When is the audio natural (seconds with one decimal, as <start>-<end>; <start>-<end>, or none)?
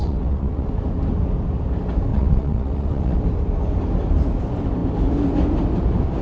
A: 0.7-2.1; 3.2-6.2